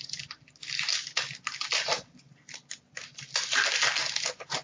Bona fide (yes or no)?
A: yes